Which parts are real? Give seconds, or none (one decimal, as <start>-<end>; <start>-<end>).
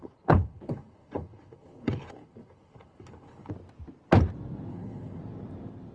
3.5-4.7; 5.2-5.9